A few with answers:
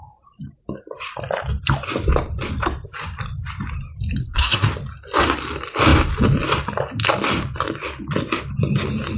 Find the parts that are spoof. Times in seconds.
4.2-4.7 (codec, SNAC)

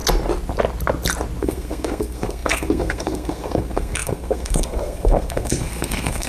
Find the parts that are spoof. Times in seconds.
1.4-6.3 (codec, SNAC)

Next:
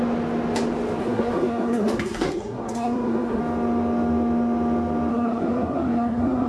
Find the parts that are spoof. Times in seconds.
1.0-3.4 (codec, SNAC); 5.1-6.5